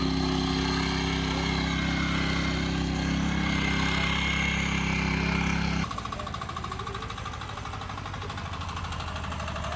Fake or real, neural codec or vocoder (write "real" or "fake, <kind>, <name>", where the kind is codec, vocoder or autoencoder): real